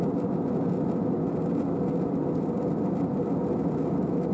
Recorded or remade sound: recorded